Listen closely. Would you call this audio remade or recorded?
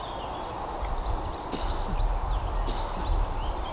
recorded